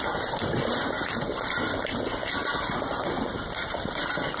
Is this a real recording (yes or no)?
yes